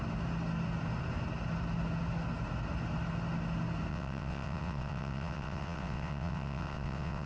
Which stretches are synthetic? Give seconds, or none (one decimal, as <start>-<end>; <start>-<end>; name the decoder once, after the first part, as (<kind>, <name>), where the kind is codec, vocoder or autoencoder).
3.9-7.3 (vocoder, WaveNeXt)